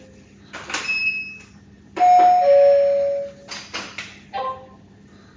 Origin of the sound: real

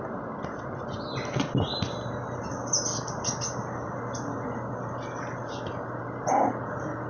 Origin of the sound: real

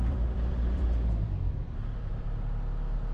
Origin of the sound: fake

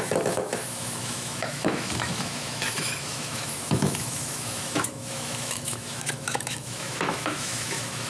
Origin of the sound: fake